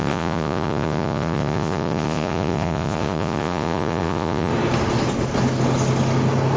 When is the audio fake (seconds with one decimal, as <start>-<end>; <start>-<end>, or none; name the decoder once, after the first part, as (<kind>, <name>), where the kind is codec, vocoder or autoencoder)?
0.0-4.5 (vocoder, Vocos)